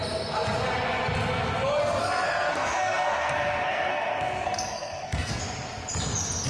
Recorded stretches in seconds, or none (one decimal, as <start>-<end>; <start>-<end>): 0.0-2.0; 5.4-6.5